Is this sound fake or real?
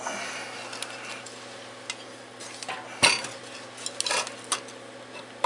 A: real